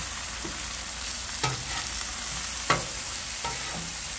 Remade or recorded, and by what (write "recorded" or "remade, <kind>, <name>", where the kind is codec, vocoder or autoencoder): recorded